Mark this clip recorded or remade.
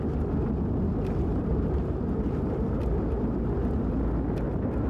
recorded